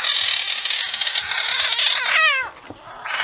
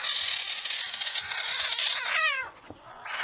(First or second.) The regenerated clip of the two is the second